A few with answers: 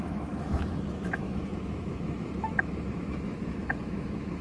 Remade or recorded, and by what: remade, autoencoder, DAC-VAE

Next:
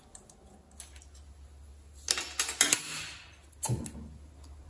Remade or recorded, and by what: recorded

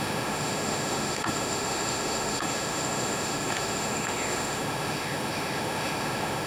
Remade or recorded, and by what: remade, autoencoder, DAC-VAE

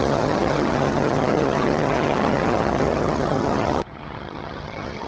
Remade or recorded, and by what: remade, vocoder, HiFi-GAN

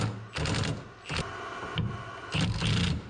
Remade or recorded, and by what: recorded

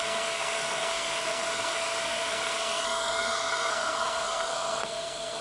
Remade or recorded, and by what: remade, codec, SNAC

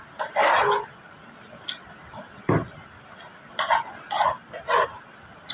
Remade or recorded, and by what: recorded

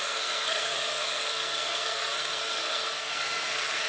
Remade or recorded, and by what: remade, codec, SNAC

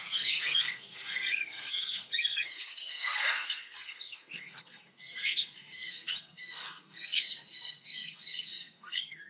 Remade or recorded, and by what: remade, codec, SNAC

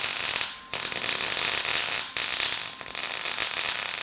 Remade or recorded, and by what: recorded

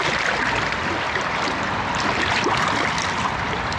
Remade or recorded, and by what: recorded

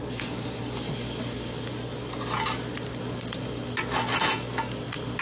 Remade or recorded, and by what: recorded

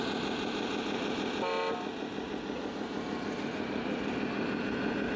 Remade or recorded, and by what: recorded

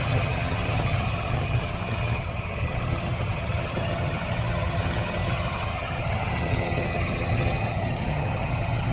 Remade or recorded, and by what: remade, vocoder, HiFi-GAN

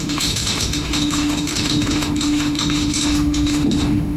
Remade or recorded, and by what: remade, autoencoder, DAC-VAE